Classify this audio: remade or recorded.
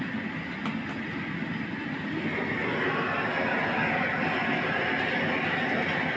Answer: recorded